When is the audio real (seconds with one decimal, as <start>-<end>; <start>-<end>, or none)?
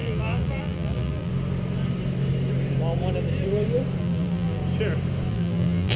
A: 1.3-4.0; 4.6-5.3